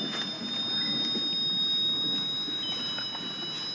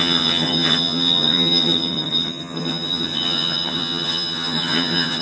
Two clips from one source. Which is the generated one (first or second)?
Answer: second